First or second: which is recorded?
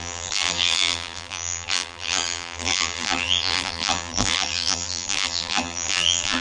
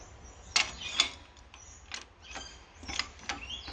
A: second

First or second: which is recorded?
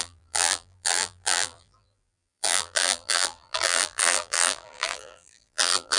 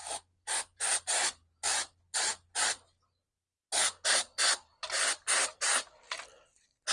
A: second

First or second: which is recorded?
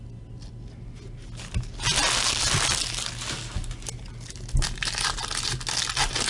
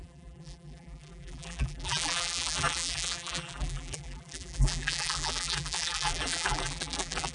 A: first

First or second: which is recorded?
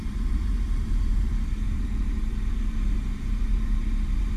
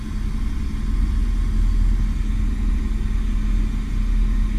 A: second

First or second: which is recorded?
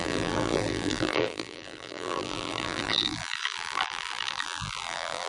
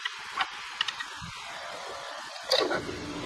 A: second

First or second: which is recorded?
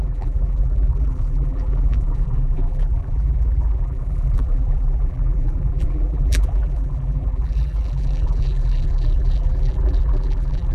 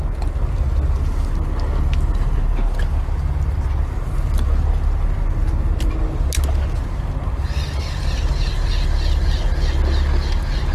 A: second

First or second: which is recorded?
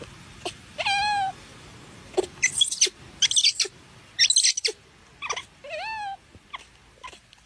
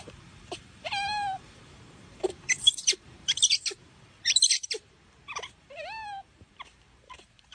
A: first